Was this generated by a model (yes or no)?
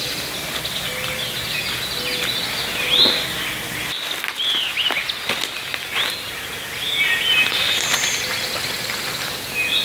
no